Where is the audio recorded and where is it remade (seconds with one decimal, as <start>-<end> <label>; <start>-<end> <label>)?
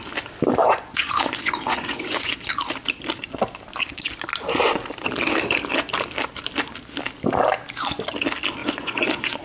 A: 0.0-0.6 recorded; 0.6-2.5 remade; 2.5-8.6 recorded; 8.6-9.4 remade